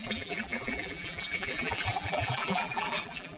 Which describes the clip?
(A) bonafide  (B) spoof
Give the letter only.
B